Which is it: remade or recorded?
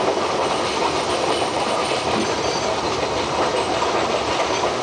recorded